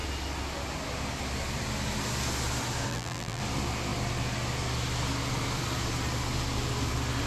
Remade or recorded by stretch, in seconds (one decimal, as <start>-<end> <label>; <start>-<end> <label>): 0.0-2.9 recorded; 2.9-3.4 remade; 3.4-7.3 recorded